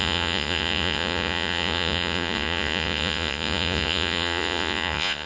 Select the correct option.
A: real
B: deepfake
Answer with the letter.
B